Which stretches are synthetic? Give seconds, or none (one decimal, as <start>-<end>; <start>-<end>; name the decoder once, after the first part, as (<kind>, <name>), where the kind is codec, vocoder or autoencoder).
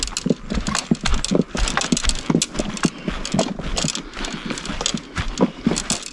none